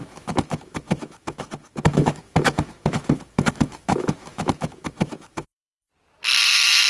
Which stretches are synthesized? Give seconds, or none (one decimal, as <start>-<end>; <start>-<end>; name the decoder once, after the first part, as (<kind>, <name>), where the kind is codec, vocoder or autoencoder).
0.0-5.9 (autoencoder, DAC-VAE)